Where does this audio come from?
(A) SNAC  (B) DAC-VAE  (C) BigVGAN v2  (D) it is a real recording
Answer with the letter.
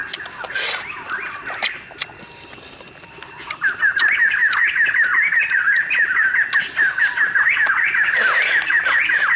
D